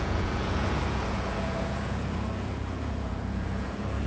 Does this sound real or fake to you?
fake